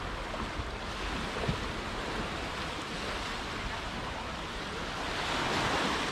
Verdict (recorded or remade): recorded